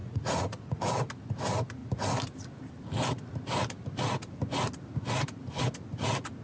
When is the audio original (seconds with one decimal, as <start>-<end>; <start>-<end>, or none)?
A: 0.8-6.4